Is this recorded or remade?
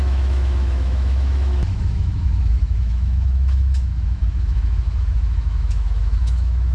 remade